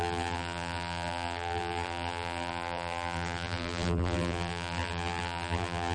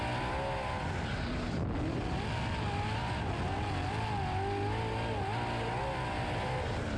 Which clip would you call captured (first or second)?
second